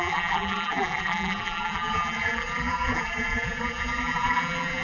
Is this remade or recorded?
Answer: remade